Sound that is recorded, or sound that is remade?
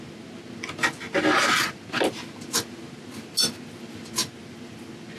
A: recorded